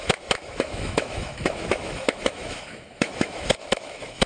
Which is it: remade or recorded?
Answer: remade